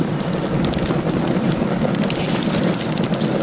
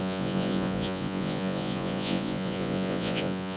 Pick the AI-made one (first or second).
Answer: second